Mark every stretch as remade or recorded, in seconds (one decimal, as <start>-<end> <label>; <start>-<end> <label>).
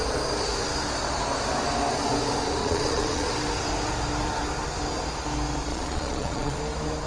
0.0-2.6 recorded; 2.6-3.3 remade; 3.3-5.7 recorded; 5.7-6.6 remade; 6.6-7.1 recorded